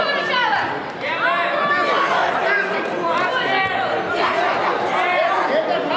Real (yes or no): yes